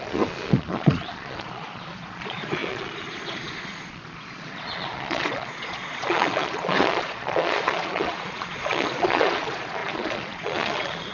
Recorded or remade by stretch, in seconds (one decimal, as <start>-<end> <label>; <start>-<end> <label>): 0.0-11.1 remade